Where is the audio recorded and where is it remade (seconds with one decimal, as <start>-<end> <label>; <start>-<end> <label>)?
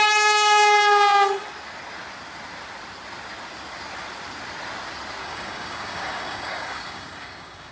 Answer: 0.0-5.2 recorded; 5.2-7.7 remade